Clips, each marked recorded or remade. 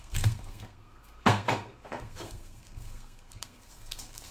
remade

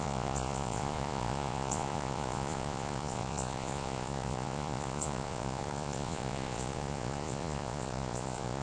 remade